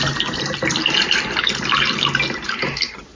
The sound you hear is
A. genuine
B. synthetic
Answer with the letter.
A